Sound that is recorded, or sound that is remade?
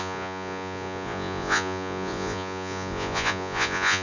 remade